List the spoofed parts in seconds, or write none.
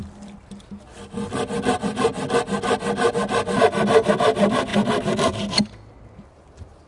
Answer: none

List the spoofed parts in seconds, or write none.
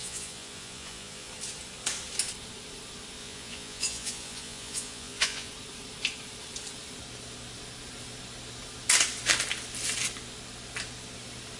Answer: 0.0-1.3 (vocoder, Vocos); 3.2-5.5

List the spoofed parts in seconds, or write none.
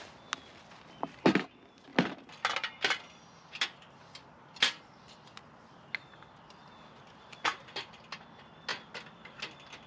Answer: none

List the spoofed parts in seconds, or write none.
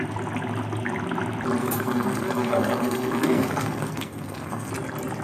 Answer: 1.6-4.7 (codec, SNAC)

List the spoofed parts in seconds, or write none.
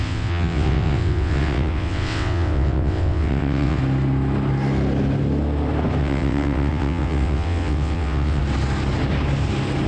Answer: 0.0-3.8 (vocoder, WaveNeXt); 6.0-8.4